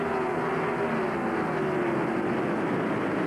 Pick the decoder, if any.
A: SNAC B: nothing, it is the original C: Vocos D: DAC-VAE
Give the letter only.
B